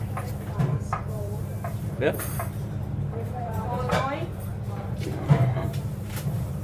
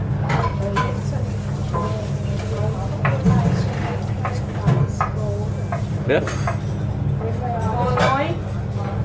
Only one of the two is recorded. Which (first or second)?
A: second